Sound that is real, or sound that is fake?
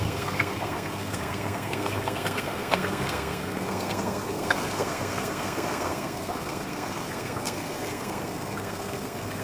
fake